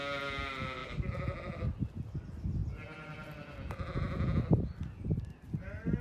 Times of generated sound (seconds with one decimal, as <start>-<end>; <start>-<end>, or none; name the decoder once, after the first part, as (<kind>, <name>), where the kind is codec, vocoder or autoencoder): none